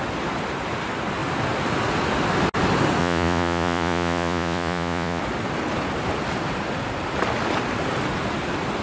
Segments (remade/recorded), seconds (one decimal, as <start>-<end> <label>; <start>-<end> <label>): 0.0-3.0 recorded; 3.0-5.2 remade; 5.2-8.8 recorded